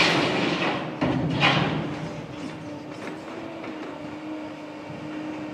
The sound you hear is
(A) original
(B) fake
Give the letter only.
A